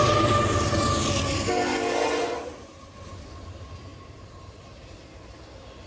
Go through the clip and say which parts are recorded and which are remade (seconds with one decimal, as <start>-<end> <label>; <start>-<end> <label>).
0.0-3.9 recorded; 3.9-4.6 remade; 4.6-5.9 recorded